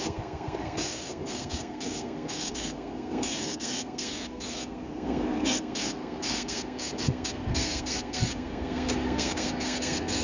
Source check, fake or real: fake